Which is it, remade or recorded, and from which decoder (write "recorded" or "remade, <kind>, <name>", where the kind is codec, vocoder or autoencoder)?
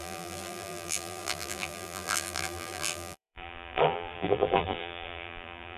remade, vocoder, BigVGAN v2